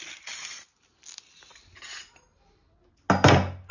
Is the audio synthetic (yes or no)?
no